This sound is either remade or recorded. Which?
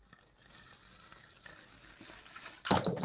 recorded